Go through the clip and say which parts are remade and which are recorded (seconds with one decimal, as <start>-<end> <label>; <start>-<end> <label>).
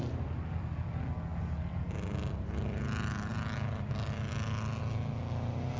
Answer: 0.0-5.8 recorded